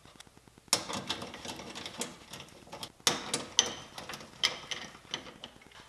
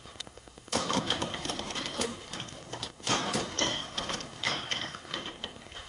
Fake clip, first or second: second